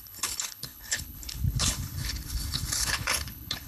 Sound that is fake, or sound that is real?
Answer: fake